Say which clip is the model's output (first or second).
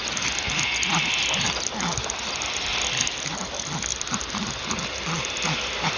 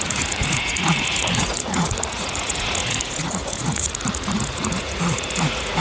second